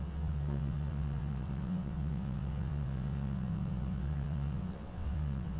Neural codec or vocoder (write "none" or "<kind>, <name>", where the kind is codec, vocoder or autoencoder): vocoder, WaveNeXt